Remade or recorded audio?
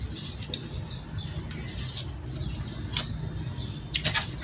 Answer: recorded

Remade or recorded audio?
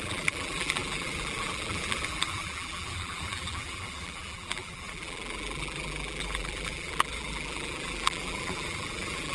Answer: remade